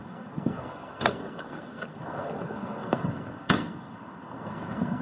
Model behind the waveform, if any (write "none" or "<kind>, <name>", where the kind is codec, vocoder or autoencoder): codec, SNAC